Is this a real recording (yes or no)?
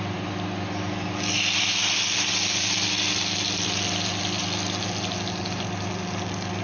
yes